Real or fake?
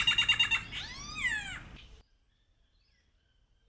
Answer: real